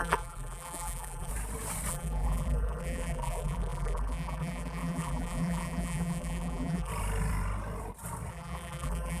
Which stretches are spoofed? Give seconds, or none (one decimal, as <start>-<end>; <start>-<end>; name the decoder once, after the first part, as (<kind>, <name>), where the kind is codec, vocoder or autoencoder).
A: 0.0-1.3 (vocoder, BigVGAN v2); 1.9-6.9; 8.3-9.2